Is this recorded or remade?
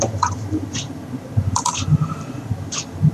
remade